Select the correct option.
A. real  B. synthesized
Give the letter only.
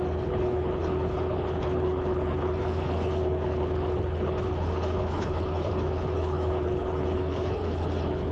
B